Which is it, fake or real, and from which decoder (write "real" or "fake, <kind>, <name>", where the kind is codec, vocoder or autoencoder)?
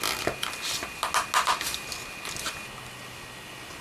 real